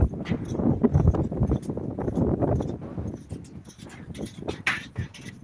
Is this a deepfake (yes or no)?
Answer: no